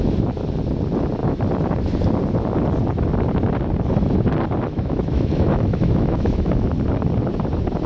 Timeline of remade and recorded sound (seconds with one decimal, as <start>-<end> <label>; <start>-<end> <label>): 0.0-4.7 recorded; 4.7-6.7 remade; 6.7-7.9 recorded